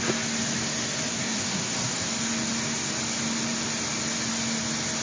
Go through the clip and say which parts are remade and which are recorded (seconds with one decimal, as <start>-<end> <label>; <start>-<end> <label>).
0.0-1.1 recorded; 1.1-2.1 remade; 2.1-5.0 recorded